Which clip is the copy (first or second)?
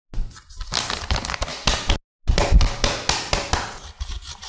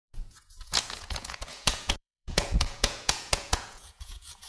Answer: second